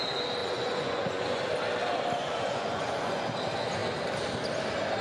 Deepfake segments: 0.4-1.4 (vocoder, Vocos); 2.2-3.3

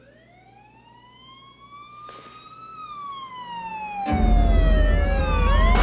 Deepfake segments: none

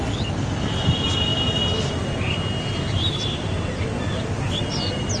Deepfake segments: none

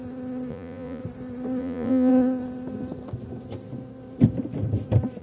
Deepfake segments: 0.5-1.0 (vocoder, Vocos); 1.6-2.1

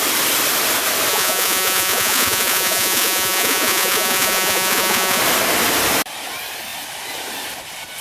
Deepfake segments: 1.1-5.2 (vocoder, Vocos)

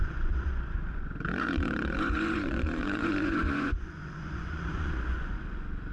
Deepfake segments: 0.0-5.9 (vocoder, Vocos)

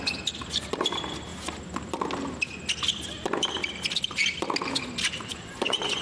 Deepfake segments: 5.3-6.0 (vocoder, Vocos)